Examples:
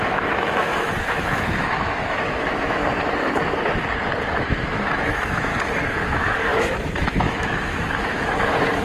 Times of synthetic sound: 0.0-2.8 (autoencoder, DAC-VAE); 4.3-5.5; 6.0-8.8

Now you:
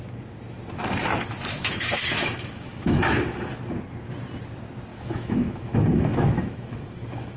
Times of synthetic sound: 1.5-3.5 (autoencoder, DAC-VAE); 4.9-7.4

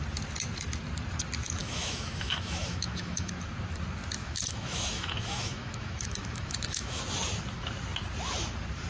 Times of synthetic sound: 1.6-3.3 (autoencoder, DAC-VAE); 4.2-7.0

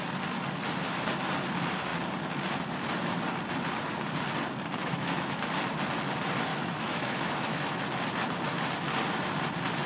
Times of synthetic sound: 4.8-5.5 (autoencoder, DAC-VAE); 6.5-7.8